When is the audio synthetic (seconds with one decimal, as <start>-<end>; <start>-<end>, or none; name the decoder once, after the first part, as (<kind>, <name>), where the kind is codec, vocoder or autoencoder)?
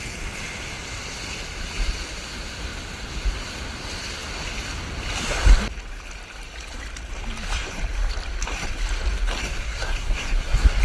9.5-10.8 (codec, SNAC)